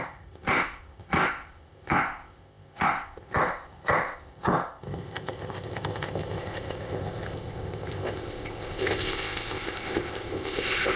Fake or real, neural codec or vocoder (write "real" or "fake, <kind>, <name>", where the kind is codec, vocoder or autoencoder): fake, codec, ZipCodec